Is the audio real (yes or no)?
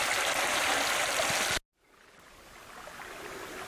yes